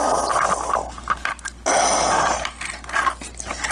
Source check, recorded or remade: recorded